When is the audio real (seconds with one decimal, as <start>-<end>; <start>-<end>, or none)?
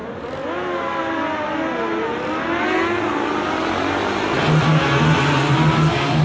0.0-6.2